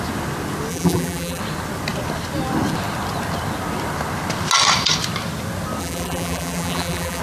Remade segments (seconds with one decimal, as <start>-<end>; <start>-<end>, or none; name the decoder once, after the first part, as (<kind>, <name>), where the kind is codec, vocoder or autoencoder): 0.7-1.4 (vocoder, BigVGAN v2); 5.8-7.2